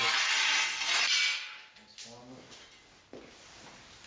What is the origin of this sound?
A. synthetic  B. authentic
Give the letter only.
B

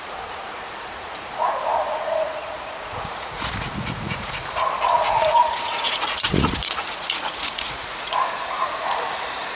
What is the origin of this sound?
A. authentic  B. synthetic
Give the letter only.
B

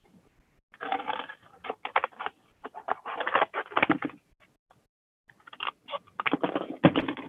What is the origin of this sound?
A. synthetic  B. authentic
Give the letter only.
B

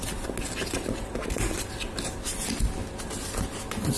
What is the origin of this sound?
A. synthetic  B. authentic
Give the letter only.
B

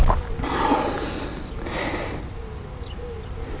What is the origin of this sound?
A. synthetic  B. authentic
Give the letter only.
B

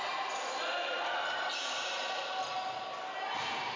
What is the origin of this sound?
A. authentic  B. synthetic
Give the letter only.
A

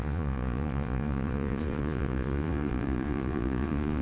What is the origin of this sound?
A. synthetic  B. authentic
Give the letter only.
A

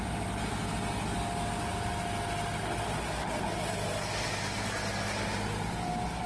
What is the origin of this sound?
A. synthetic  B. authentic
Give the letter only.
B